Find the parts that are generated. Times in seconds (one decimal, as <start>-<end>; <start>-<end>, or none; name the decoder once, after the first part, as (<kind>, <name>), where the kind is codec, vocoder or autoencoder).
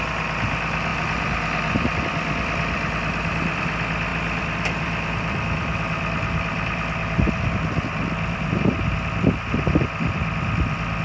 4.1-8.5 (vocoder, BigVGAN v2)